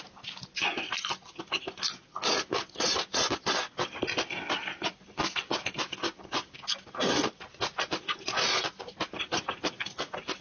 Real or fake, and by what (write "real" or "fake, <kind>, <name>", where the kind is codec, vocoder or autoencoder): real